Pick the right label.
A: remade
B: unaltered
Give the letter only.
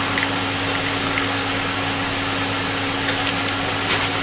B